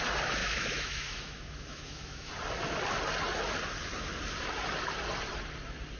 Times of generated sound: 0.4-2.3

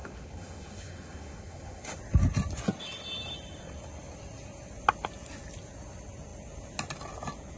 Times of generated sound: 0.0-2.0